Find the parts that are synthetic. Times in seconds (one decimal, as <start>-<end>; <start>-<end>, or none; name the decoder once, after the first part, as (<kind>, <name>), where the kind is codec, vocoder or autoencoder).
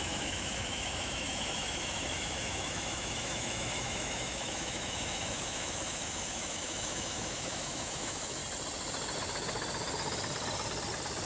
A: 0.0-8.4 (autoencoder, DAC-VAE)